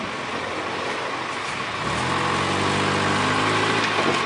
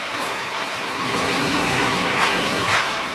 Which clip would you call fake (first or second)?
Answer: second